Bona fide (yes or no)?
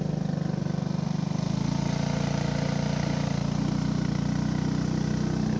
yes